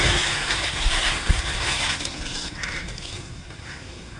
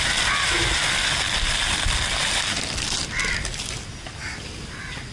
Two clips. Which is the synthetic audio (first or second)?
first